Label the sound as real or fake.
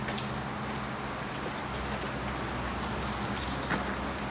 real